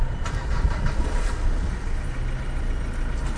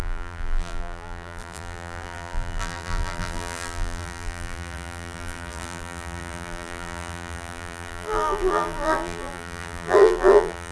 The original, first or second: first